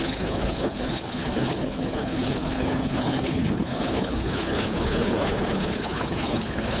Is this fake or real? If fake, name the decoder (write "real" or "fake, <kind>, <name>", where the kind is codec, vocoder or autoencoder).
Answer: fake, codec, HILCodec